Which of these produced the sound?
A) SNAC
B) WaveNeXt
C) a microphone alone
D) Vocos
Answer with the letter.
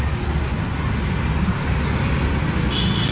C